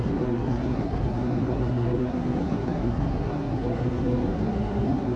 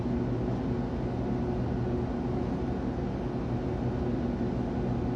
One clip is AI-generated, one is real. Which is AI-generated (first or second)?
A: first